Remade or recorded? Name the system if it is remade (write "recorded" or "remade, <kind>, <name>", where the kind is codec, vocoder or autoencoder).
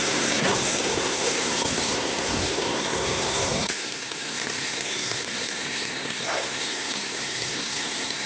remade, codec, SNAC